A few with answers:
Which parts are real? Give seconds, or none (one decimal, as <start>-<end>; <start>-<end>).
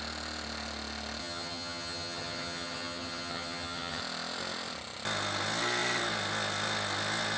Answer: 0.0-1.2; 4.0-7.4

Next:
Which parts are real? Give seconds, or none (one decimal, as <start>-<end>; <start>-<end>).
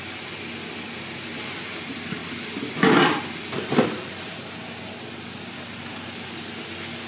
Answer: 0.0-7.1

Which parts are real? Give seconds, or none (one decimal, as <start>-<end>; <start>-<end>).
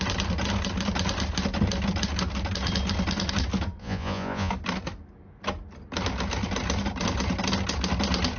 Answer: 0.0-3.8; 4.5-8.4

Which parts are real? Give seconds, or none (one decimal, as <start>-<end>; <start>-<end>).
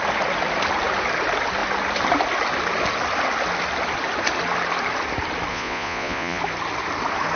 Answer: 0.0-5.5; 6.4-7.4